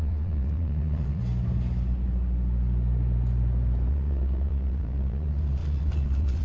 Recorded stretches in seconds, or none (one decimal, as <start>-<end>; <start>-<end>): 1.2-3.9